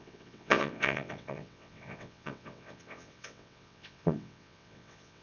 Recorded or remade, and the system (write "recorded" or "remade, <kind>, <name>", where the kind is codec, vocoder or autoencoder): remade, vocoder, WaveNeXt